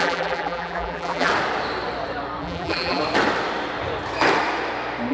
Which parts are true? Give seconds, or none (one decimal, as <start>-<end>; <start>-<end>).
1.3-2.4; 3.0-5.1